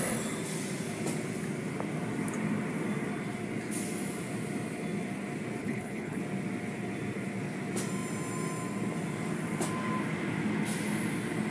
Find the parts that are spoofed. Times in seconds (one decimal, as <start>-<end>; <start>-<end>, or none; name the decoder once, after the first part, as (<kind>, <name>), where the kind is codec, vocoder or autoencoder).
5.6-6.2 (codec, HILCodec)